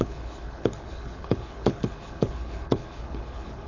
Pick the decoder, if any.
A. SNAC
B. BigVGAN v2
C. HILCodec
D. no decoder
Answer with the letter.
C